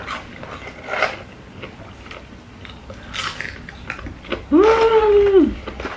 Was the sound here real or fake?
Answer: real